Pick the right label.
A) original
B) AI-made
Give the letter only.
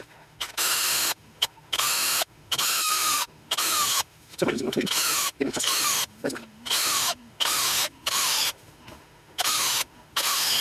B